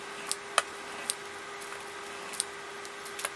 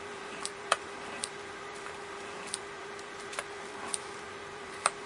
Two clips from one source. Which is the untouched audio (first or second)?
first